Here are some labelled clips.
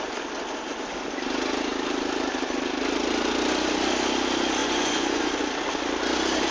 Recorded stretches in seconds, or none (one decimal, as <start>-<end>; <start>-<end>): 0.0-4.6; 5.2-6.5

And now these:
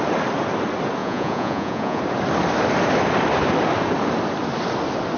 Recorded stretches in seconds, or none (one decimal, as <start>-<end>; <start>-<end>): 0.0-1.0; 2.0-5.2

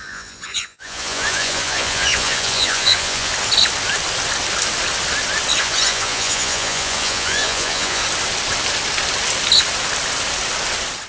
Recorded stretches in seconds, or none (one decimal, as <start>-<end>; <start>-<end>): 3.3-5.6; 8.0-11.1

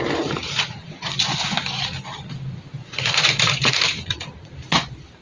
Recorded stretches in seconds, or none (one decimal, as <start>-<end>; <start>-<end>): 0.0-0.4; 1.1-2.8; 4.7-5.2

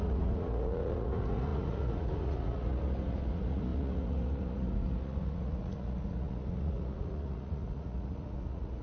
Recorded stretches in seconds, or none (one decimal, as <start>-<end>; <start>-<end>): none

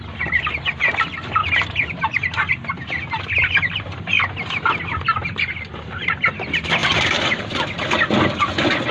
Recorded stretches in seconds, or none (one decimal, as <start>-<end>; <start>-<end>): 0.0-8.9

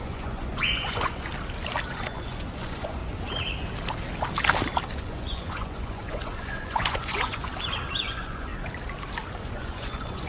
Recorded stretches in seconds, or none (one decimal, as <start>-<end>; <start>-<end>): 1.3-1.9; 3.0-4.9; 7.5-8.0; 8.5-9.4

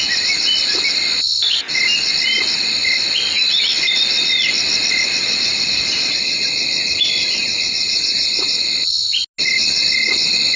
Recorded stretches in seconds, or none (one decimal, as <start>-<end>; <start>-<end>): 0.0-7.8; 8.6-10.6